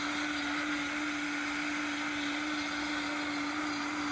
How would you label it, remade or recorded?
recorded